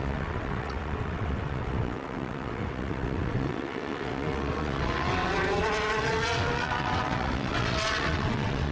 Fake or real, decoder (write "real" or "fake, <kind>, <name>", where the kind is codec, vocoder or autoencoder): fake, vocoder, WaveNeXt